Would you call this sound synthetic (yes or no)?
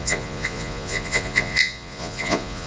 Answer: yes